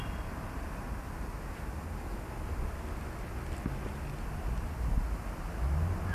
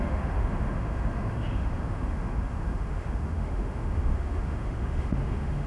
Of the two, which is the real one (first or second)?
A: first